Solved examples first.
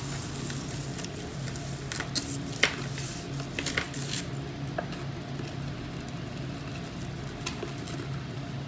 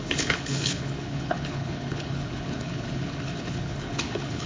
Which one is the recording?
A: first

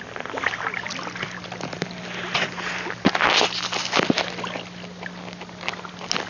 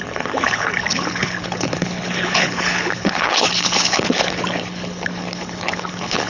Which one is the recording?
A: first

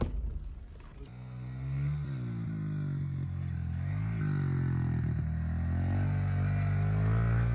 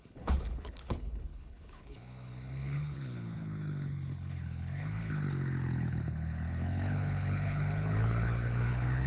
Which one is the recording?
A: first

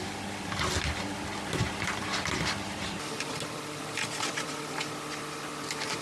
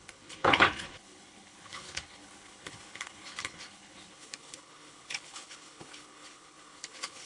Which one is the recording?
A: first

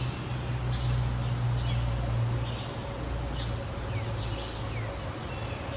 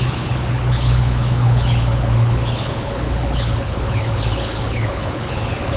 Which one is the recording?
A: first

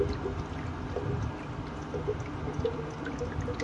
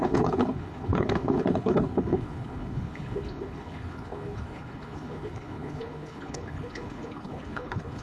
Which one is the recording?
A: first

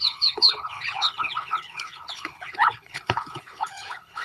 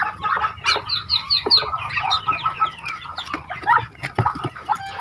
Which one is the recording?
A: second